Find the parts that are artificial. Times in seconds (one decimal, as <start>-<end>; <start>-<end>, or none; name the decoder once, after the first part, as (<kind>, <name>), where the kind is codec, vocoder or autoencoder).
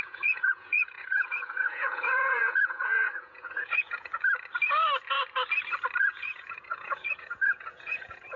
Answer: 0.0-4.1 (vocoder, Vocos); 6.0-8.4